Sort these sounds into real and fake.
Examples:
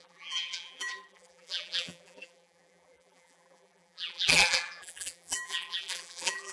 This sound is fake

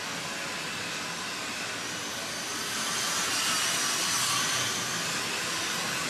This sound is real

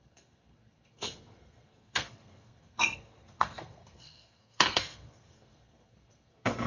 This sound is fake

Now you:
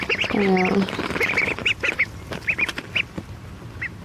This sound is real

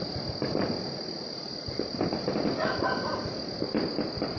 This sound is real